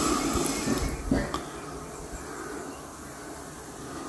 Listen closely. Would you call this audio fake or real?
real